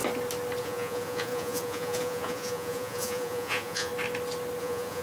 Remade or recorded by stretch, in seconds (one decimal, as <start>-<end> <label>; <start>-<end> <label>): 0.0-0.6 recorded; 0.6-3.9 remade; 3.9-4.6 recorded; 4.6-5.0 remade